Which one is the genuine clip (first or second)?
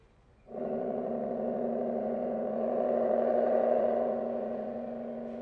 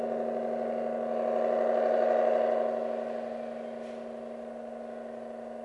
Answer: second